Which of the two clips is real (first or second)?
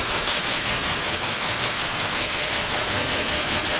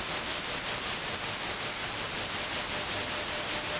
second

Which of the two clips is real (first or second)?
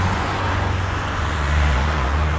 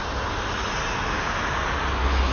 second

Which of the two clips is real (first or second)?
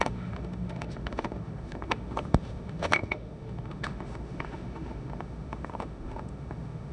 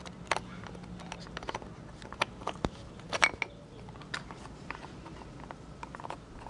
second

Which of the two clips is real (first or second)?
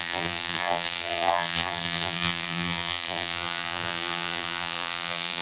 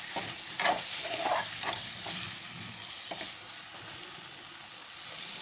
second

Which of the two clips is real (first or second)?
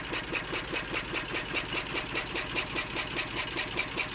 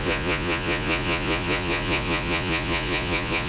first